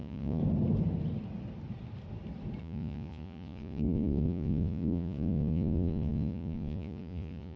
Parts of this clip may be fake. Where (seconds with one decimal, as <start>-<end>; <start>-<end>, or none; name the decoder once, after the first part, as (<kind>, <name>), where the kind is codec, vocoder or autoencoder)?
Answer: 0.0-0.4 (vocoder, Vocos); 2.6-7.6